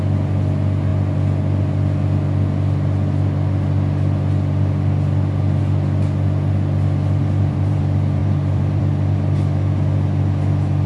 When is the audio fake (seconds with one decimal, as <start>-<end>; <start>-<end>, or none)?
7.2-7.8; 8.2-8.8